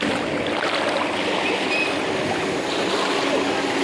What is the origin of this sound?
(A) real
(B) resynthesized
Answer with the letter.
A